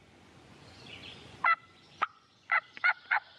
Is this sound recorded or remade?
remade